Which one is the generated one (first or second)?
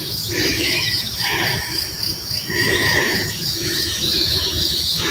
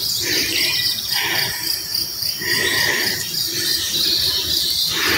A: first